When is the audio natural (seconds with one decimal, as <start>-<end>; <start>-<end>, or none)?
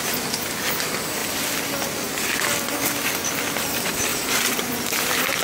0.0-4.1